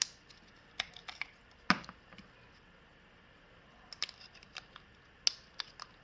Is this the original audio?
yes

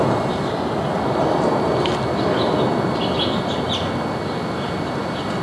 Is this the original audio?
yes